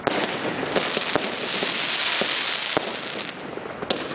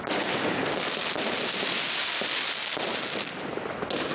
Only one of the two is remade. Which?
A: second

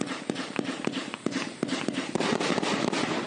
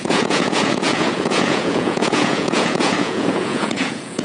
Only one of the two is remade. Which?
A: second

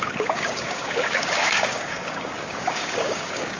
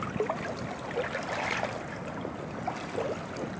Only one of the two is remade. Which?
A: first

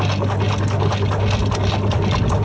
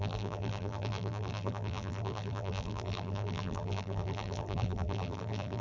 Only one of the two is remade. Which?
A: second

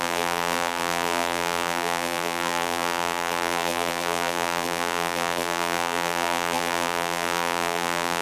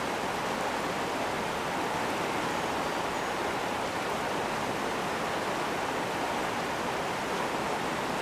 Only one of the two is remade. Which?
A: first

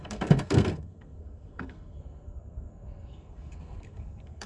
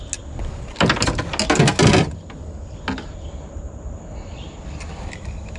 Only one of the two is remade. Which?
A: first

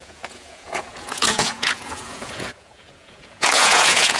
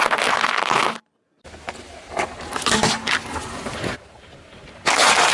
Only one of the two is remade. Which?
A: first